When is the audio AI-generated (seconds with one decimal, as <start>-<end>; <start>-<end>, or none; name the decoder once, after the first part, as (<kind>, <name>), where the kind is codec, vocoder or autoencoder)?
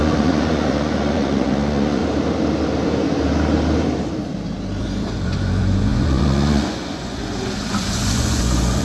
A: 0.0-2.0 (vocoder, Vocos); 4.8-8.8